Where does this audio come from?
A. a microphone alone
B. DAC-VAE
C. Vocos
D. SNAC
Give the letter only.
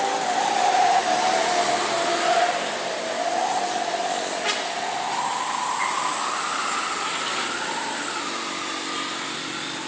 A